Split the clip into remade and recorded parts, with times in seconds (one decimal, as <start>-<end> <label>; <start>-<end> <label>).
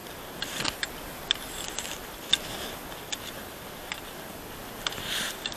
0.0-5.6 recorded